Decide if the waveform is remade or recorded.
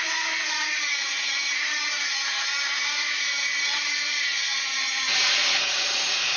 remade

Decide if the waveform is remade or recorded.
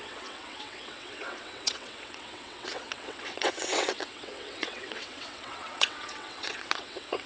remade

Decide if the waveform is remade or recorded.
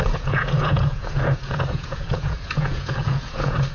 remade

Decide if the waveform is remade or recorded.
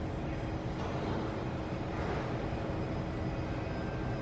recorded